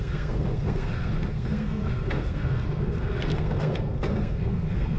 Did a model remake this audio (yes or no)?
yes